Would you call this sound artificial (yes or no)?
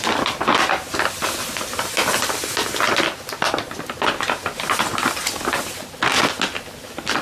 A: no